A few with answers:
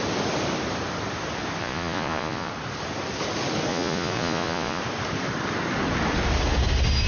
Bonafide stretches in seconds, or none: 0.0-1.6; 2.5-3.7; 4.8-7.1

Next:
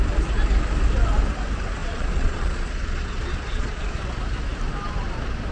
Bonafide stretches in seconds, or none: 0.0-1.8; 4.1-5.5

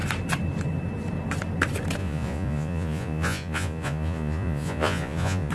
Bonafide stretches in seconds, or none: 0.0-2.0

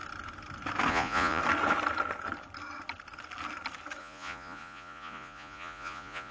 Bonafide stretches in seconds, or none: 0.0-0.9; 1.4-4.0

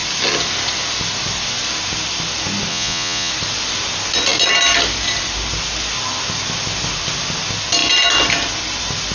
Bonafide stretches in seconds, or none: 0.0-2.7; 3.3-9.1